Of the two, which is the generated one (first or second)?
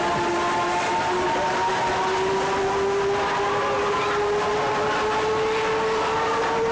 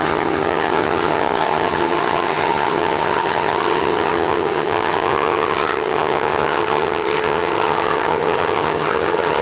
second